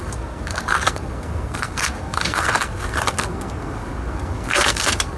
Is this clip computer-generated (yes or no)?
yes